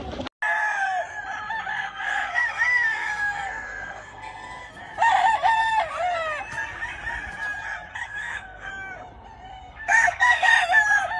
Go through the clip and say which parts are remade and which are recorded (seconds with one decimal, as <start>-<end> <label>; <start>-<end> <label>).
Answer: 0.0-1.7 recorded; 1.7-4.7 remade; 4.7-7.9 recorded; 7.9-8.7 remade; 8.7-9.5 recorded; 9.5-10.5 remade; 10.5-11.2 recorded